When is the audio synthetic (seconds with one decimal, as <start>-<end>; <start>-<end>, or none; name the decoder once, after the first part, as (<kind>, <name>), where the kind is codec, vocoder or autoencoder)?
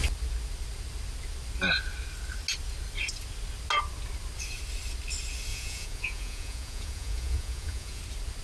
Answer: 5.5-8.0 (vocoder, Vocos)